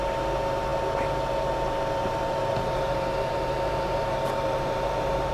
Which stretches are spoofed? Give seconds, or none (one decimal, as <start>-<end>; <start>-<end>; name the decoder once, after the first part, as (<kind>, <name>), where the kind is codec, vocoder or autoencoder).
2.0-5.3 (vocoder, BigVGAN v2)